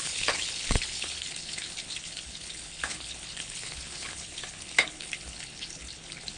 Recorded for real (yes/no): no